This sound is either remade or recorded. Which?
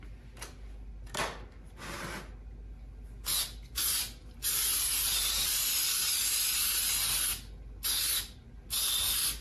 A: recorded